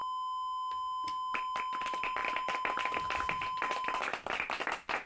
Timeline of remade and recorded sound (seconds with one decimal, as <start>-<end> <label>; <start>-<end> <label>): 0.0-5.1 recorded